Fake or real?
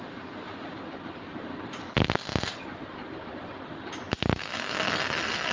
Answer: real